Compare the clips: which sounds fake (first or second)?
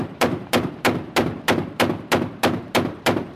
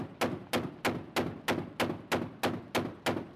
first